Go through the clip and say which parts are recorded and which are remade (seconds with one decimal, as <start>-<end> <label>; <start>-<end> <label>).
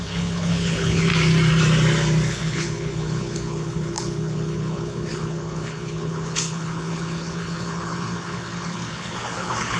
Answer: 0.0-1.1 remade; 1.1-2.3 recorded; 2.3-9.8 remade